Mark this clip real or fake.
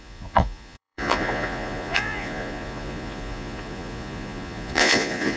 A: fake